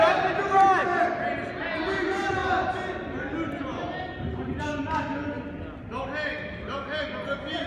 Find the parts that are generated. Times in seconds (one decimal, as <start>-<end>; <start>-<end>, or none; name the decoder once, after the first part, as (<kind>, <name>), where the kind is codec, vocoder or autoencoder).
none